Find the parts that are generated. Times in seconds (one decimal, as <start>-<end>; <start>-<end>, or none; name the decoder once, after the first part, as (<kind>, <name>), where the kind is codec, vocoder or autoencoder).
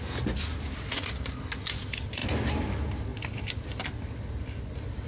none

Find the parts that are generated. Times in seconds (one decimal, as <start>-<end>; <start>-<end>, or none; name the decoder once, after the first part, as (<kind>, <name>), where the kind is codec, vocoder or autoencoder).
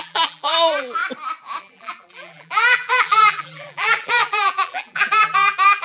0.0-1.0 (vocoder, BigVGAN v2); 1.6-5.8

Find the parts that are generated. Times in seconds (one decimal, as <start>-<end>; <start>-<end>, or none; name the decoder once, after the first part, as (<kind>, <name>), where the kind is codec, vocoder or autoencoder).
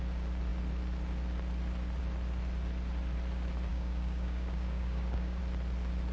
3.7-5.4 (codec, DAC)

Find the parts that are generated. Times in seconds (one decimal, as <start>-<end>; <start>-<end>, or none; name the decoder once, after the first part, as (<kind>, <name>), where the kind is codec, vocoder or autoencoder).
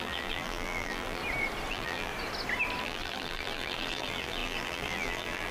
0.0-1.2 (vocoder, BigVGAN v2); 1.7-2.1; 2.8-5.5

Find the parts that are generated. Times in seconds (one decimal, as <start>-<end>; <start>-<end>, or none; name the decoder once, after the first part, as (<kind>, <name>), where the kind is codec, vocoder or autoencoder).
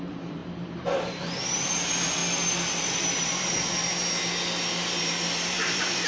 0.0-2.2 (vocoder, BigVGAN v2); 2.8-3.8; 5.0-6.1